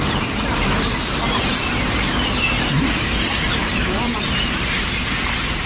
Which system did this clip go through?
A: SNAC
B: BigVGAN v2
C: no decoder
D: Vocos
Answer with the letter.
B